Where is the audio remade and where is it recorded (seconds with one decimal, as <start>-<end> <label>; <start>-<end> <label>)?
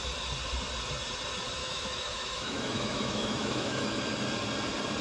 0.0-1.6 recorded; 1.6-4.0 remade; 4.0-5.0 recorded